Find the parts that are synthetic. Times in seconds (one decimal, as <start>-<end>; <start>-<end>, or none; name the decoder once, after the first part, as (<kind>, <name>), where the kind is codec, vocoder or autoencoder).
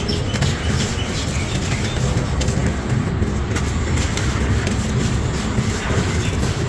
none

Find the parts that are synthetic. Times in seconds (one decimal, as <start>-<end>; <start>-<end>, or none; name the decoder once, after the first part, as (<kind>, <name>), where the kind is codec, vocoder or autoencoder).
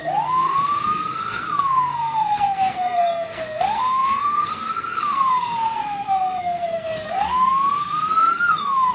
0.0-8.9 (codec, SNAC)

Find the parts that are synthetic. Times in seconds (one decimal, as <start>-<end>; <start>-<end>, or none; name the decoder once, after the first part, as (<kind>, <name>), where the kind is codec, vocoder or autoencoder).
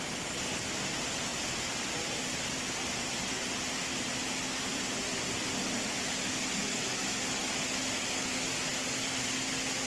6.6-7.2 (autoencoder, DAC-VAE)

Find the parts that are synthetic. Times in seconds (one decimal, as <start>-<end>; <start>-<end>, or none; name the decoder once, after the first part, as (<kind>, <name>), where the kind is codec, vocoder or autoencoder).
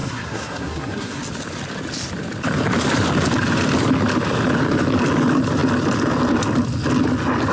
0.0-1.2 (codec, SNAC)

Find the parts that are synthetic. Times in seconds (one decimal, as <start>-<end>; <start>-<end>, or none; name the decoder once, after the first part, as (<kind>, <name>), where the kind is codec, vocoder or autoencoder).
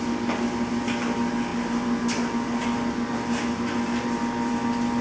none